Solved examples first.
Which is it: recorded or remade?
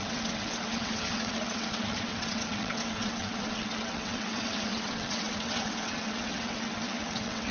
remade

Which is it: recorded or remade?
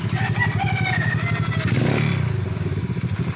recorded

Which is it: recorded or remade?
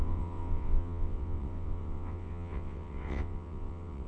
remade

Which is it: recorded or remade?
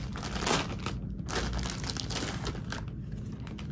recorded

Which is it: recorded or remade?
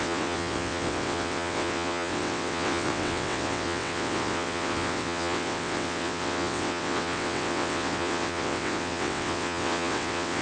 remade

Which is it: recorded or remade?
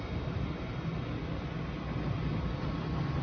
recorded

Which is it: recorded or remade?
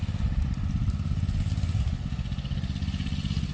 recorded